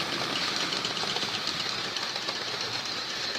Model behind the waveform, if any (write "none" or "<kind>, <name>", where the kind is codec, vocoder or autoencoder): none